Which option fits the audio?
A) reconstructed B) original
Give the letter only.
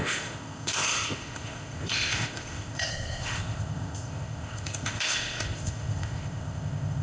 A